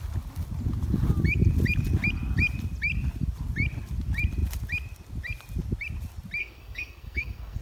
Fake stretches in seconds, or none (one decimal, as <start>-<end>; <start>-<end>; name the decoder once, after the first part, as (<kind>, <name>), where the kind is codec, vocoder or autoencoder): 6.4-7.6 (codec, SNAC)